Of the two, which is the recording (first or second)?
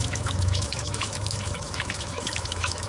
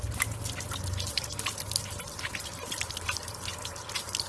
second